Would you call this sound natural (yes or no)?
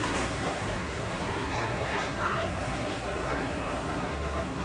no